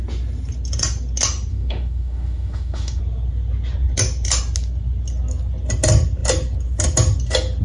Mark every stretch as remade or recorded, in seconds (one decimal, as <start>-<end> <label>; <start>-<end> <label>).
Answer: 0.0-1.5 recorded; 1.5-3.0 remade; 3.0-7.6 recorded